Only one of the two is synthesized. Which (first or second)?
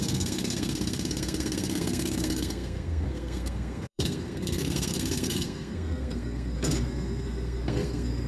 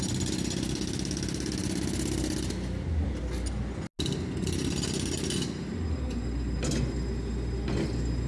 first